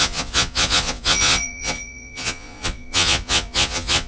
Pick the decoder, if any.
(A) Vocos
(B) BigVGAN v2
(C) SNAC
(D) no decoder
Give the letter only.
A